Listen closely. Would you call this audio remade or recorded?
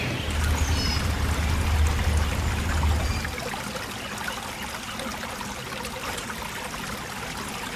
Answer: recorded